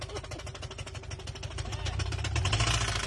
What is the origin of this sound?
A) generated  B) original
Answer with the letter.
B